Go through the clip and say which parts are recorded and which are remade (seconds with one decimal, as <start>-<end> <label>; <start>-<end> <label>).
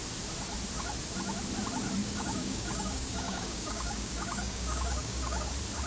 0.0-2.0 recorded; 2.0-5.5 remade; 5.5-5.9 recorded